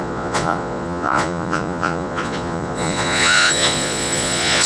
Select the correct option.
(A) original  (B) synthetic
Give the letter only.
B